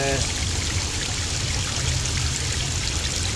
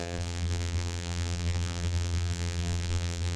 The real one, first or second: first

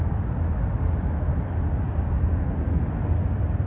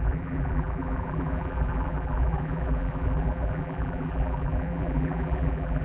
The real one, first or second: first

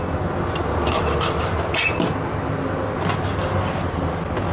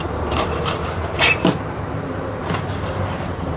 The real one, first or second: first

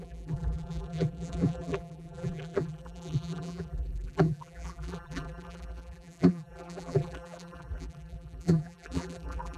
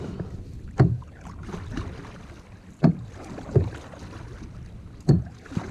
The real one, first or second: second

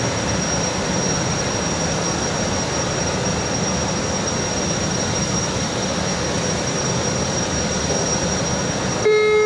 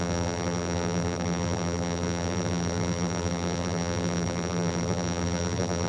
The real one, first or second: first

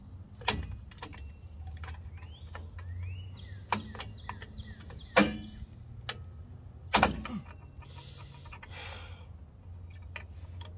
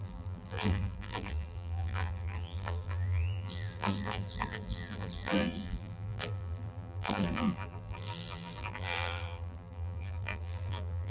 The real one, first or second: first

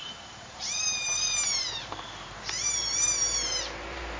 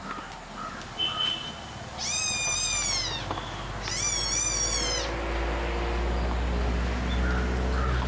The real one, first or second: second